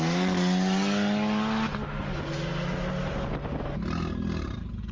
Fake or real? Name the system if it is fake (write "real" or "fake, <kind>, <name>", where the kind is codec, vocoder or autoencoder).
real